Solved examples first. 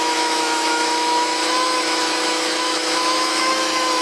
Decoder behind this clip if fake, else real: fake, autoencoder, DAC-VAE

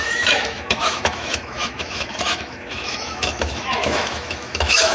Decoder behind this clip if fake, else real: fake, autoencoder, DAC-VAE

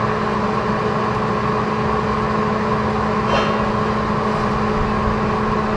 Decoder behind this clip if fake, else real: real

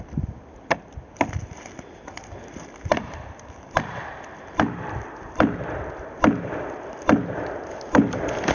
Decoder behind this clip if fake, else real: real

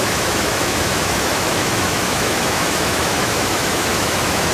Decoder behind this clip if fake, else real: fake, autoencoder, DAC-VAE